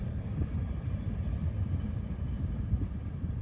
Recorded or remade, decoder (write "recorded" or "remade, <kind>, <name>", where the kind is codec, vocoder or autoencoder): remade, vocoder, BigVGAN v2